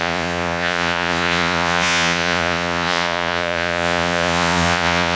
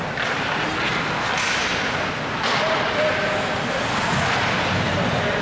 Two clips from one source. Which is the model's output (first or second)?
first